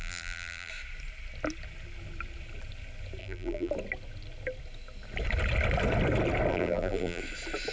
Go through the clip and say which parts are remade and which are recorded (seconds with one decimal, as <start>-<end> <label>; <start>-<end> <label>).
0.0-0.7 remade; 0.7-3.2 recorded; 3.2-3.7 remade; 3.7-6.5 recorded; 6.5-7.2 remade; 7.2-7.7 recorded